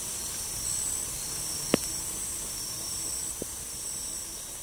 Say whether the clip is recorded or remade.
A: recorded